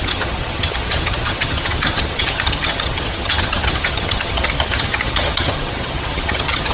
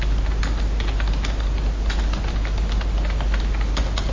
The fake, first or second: first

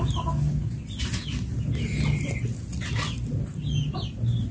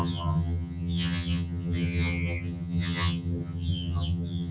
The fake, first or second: second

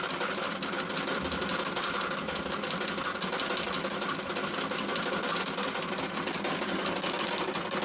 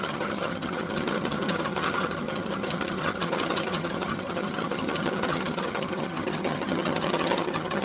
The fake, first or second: second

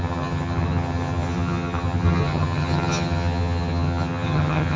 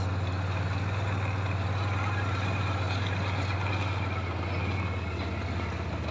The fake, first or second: first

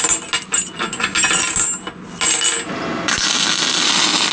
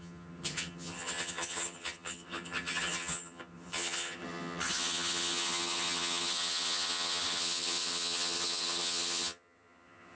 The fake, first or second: second